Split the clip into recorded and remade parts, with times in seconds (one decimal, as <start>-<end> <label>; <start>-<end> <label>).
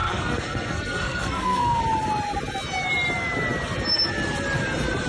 0.0-1.8 remade; 1.8-5.1 recorded